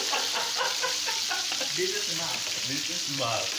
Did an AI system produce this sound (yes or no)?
no